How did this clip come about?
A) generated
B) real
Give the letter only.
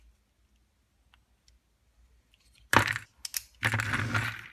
B